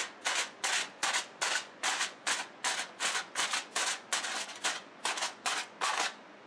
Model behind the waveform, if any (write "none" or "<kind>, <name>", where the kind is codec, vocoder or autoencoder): vocoder, Vocos